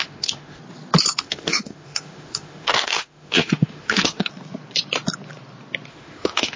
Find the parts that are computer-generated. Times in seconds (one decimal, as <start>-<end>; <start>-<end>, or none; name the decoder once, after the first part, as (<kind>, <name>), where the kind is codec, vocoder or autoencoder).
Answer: 0.0-0.6 (autoencoder, DAC-VAE); 1.2-4.3; 5.9-6.6